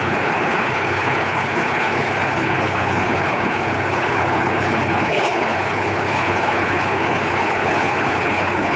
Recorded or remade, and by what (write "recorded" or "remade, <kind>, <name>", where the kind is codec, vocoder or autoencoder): remade, codec, HILCodec